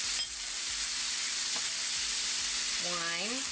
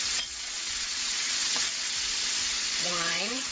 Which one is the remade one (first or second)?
second